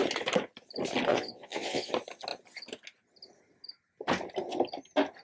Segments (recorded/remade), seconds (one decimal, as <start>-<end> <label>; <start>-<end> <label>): 0.0-1.1 recorded; 1.1-1.9 remade; 1.9-5.2 recorded